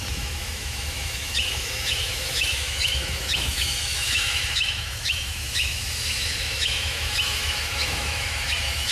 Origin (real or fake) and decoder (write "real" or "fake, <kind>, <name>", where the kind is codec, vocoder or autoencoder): fake, autoencoder, DAC-VAE